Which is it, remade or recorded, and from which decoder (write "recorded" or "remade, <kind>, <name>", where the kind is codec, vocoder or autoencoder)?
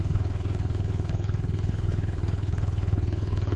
remade, codec, HILCodec